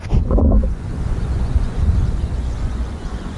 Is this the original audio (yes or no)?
no